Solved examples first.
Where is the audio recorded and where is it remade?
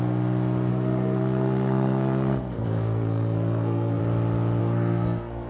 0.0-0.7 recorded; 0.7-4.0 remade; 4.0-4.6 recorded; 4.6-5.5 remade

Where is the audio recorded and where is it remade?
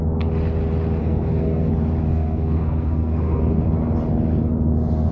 0.0-1.0 recorded; 1.0-1.7 remade; 1.7-2.1 recorded; 2.1-3.4 remade; 3.4-5.1 recorded